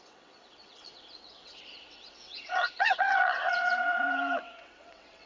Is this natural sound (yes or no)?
no